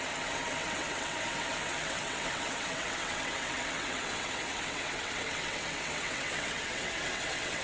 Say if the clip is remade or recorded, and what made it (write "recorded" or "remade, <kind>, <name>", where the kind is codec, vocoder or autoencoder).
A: remade, vocoder, WaveNeXt